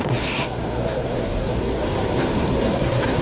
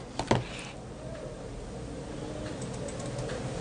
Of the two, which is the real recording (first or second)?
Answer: second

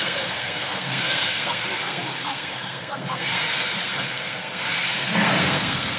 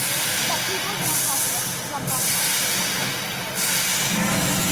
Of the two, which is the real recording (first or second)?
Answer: second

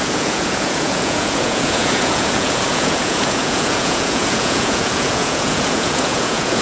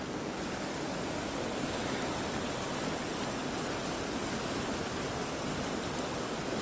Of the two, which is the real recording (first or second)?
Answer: second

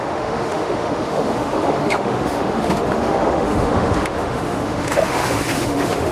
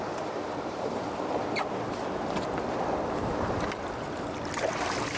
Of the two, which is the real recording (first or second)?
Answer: second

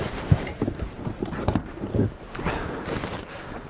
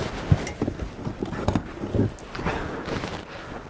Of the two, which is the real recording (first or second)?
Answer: second